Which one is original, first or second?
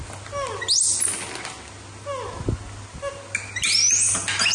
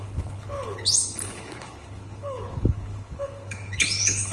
first